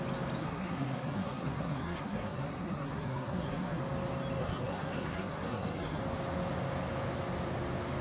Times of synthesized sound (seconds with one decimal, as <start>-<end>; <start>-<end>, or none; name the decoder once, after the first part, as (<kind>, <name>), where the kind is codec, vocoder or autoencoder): 0.4-3.8 (codec, SNAC); 4.4-6.0